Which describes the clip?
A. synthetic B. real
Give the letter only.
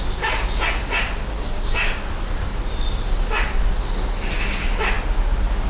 B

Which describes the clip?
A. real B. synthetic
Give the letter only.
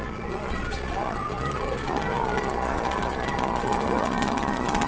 B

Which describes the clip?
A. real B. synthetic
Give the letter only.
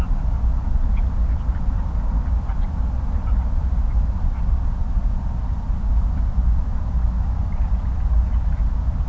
A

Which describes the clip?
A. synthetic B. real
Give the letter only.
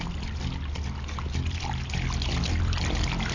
B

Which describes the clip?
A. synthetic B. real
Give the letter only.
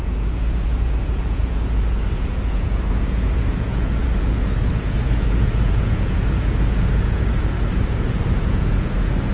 A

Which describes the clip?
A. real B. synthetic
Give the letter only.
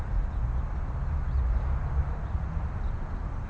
A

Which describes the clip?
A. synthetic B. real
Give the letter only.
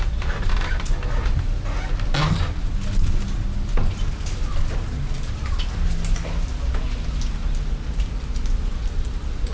B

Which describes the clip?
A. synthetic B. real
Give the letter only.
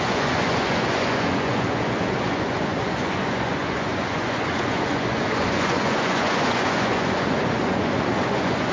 A